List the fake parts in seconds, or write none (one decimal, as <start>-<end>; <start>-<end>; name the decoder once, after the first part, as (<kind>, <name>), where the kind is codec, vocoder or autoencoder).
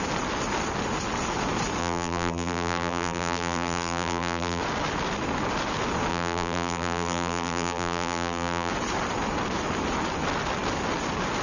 1.8-4.6 (vocoder, BigVGAN v2); 6.1-8.7